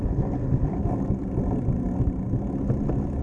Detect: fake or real real